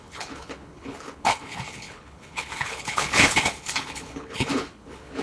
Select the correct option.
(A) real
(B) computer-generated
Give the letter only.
B